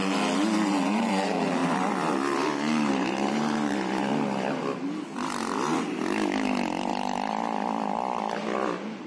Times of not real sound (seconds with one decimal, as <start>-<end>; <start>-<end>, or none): none